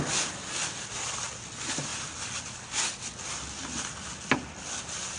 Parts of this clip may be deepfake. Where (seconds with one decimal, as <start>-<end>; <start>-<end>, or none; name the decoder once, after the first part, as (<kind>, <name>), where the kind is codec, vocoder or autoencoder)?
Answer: none